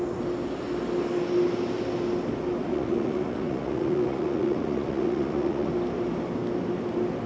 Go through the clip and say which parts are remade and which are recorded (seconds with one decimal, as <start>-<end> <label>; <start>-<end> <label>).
0.0-2.7 recorded; 2.7-5.7 remade; 5.7-7.3 recorded